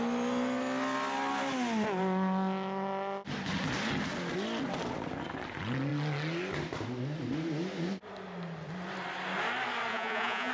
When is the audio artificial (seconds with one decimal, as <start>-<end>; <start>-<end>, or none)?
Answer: 9.9-10.5